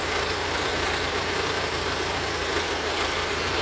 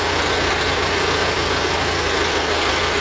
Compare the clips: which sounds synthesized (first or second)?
first